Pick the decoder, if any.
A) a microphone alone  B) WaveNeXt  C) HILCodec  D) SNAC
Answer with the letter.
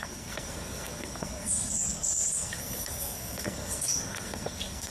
D